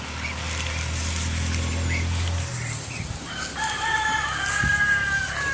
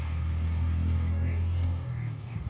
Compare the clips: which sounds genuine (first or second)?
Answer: first